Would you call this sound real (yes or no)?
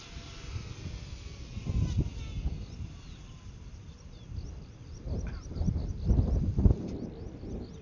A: yes